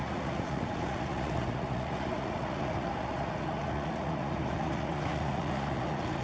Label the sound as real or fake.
fake